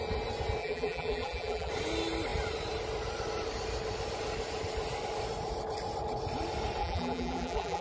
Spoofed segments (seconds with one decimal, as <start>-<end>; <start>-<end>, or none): 0.6-1.7; 6.8-7.8

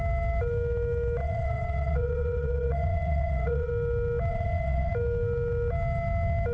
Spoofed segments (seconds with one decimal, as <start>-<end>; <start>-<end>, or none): 1.2-3.7; 4.3-4.9